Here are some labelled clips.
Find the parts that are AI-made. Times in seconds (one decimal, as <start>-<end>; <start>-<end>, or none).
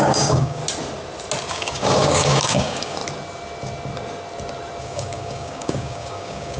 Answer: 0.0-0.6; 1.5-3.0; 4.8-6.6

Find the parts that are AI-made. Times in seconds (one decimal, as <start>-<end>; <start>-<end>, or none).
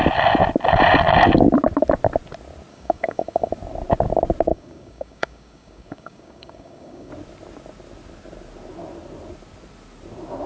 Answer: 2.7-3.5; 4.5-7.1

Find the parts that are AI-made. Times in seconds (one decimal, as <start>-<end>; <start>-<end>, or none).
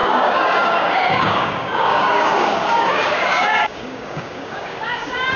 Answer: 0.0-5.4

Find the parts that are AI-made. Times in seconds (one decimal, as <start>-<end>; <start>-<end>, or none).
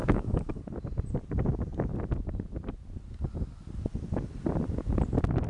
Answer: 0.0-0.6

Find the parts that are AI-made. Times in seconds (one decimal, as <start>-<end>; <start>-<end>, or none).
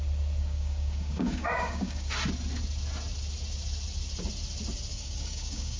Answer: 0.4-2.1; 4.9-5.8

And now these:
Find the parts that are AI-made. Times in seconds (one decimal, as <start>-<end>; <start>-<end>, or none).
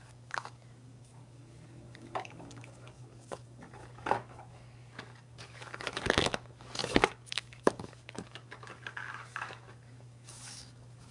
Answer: 0.0-11.1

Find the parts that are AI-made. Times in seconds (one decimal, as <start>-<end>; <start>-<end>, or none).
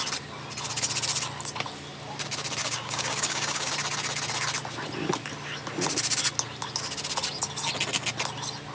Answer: 2.6-3.7